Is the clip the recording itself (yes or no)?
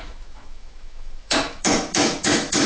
no